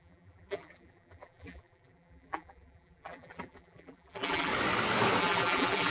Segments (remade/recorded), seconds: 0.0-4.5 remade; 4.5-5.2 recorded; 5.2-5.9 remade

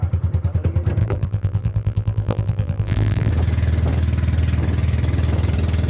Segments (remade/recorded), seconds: 0.0-1.0 recorded; 1.0-3.3 remade; 3.3-5.9 recorded

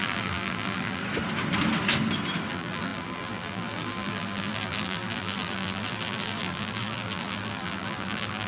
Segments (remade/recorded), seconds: 0.0-1.0 remade; 1.0-2.5 recorded; 2.5-8.5 remade